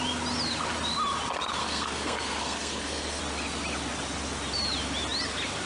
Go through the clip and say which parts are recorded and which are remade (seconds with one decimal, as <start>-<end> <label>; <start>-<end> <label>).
0.0-1.6 recorded; 1.6-3.2 remade; 3.2-5.7 recorded